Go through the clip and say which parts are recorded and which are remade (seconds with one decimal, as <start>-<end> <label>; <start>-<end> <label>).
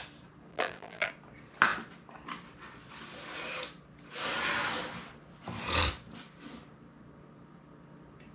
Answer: 0.0-0.5 recorded; 0.5-1.1 remade; 1.1-8.3 recorded